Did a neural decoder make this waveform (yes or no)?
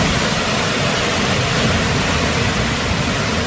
no